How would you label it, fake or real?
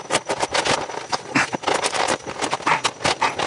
real